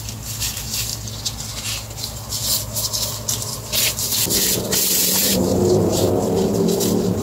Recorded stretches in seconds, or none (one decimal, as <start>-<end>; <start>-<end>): 0.0-5.2; 6.1-7.2